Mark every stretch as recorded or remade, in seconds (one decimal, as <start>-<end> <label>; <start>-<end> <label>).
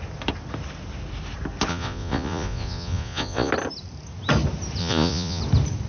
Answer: 0.0-1.7 recorded; 1.7-3.5 remade; 3.5-4.8 recorded; 4.8-5.4 remade; 5.4-5.9 recorded